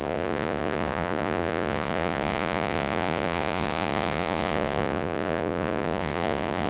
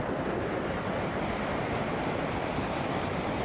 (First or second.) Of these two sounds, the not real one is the first